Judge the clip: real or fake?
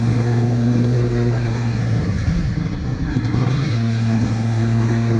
fake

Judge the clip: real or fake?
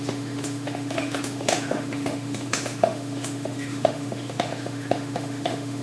fake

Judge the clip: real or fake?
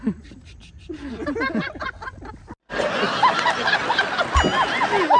real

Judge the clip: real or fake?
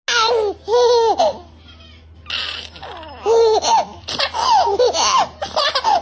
real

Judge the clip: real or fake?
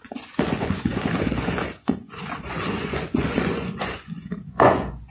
fake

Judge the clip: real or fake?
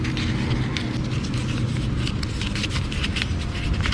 real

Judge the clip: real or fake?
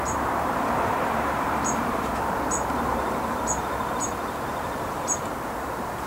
fake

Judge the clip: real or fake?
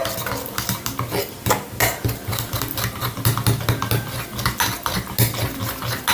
real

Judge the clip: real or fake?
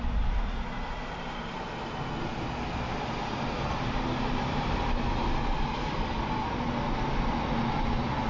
real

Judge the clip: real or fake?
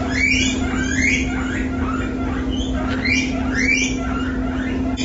real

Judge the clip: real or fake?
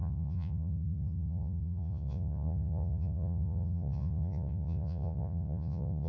fake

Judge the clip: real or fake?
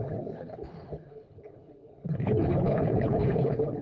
fake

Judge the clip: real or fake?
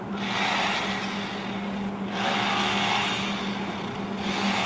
real